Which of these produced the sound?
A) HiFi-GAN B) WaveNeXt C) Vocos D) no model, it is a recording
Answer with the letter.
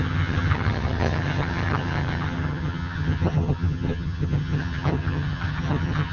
A